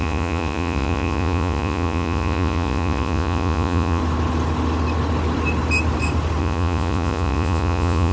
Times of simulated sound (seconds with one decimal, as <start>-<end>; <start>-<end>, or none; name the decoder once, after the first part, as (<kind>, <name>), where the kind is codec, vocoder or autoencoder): 0.0-4.0 (vocoder, Vocos); 6.4-8.1